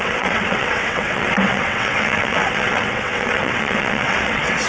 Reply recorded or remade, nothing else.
remade